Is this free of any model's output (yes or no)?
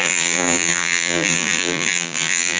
no